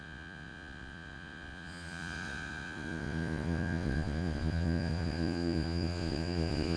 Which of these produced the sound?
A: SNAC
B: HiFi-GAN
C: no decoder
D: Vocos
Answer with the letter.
D